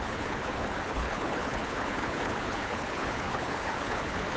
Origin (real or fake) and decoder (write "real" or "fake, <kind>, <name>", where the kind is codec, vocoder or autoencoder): fake, codec, HILCodec